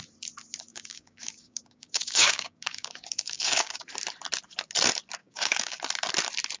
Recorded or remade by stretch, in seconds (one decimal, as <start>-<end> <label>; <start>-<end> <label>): 0.0-0.7 recorded; 0.7-3.8 remade; 3.8-5.2 recorded; 5.2-5.8 remade; 5.8-6.6 recorded